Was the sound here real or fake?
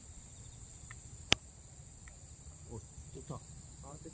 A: fake